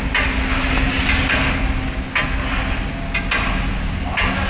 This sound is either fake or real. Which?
real